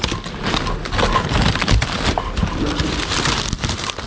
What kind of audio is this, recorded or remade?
recorded